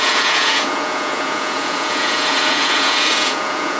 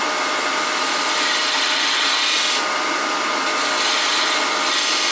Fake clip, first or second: first